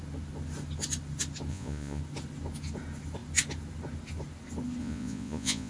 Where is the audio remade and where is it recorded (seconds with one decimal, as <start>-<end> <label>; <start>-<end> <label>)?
0.0-1.5 recorded; 1.5-2.0 remade; 2.0-4.8 recorded; 4.8-5.7 remade